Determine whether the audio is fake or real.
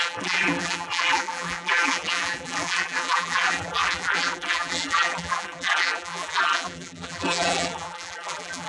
fake